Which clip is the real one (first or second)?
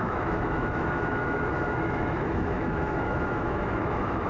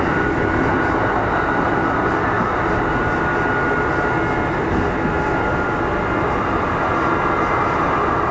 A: second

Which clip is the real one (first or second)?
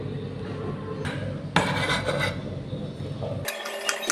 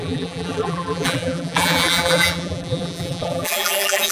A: first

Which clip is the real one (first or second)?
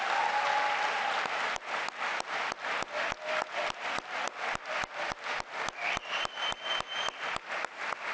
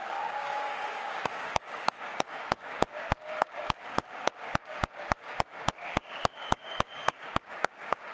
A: first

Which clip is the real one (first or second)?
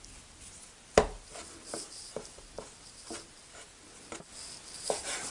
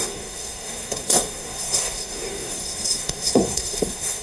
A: first